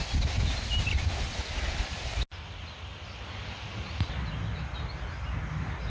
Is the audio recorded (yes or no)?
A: yes